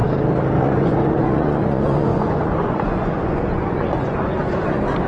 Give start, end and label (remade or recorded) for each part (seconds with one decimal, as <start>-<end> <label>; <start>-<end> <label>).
0.0-0.6 recorded; 0.6-5.1 remade